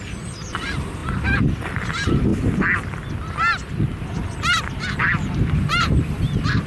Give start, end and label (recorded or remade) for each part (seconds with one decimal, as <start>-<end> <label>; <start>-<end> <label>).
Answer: 0.0-2.3 remade; 2.3-4.1 recorded; 4.1-6.7 remade